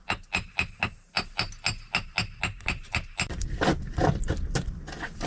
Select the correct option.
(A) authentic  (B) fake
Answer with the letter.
A